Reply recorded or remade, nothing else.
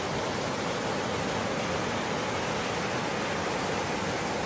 recorded